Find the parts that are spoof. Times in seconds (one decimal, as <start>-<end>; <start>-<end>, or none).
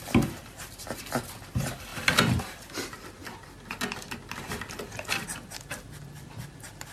0.0-1.9; 2.4-3.2; 5.1-6.9